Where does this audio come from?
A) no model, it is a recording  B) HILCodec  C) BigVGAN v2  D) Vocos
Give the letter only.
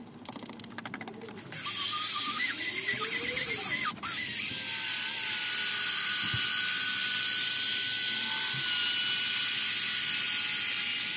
A